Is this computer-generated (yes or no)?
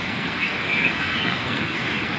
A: yes